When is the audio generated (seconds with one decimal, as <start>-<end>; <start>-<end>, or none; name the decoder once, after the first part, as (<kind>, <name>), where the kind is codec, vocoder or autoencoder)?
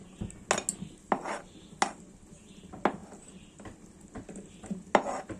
none